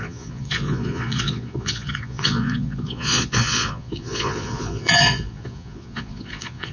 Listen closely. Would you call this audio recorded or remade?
remade